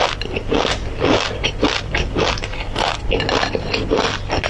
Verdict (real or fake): real